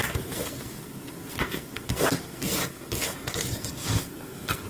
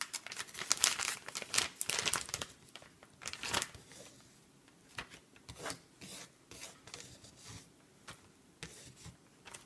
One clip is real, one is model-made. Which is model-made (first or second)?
first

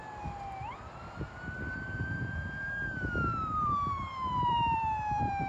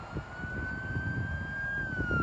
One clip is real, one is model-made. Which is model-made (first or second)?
first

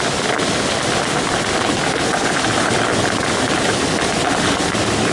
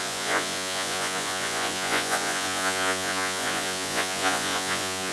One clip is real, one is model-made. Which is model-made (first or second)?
second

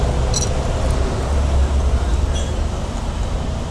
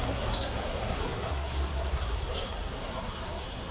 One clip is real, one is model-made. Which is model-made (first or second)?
second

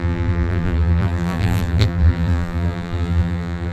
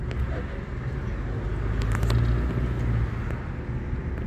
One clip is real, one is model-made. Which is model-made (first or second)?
first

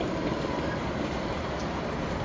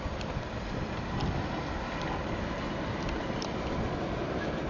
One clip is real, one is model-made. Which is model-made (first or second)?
first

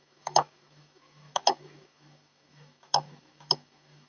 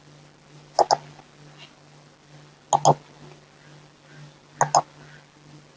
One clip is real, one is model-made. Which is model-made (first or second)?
first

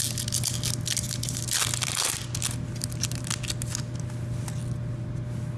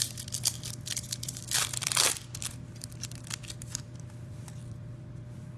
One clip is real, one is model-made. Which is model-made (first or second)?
second